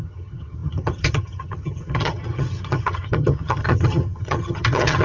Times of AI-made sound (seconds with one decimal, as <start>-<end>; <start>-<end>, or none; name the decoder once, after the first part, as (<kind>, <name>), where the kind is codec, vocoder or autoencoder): 0.0-5.0 (vocoder, HiFi-GAN)